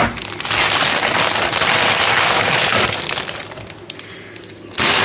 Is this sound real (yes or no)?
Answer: yes